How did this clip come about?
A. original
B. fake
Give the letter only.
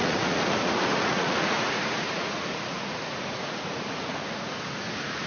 B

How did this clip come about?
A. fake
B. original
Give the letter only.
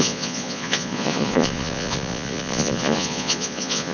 A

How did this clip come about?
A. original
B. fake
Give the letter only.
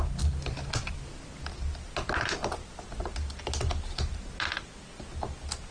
A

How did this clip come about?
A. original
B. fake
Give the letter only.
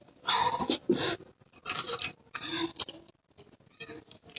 A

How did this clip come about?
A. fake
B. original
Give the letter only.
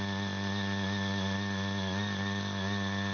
B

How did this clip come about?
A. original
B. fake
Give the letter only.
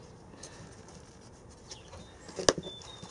A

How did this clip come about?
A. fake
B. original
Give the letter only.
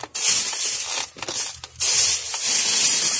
B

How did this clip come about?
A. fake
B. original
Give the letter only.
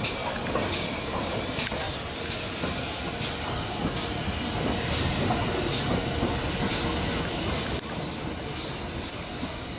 B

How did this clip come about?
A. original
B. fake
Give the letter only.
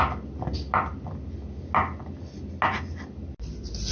A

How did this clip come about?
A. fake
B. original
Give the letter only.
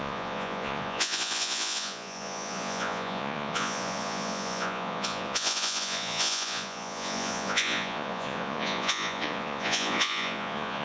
A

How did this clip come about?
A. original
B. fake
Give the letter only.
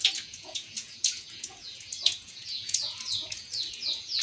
B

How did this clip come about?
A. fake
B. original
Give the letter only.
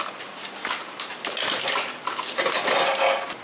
B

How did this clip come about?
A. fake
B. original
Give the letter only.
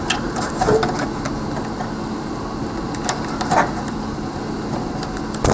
B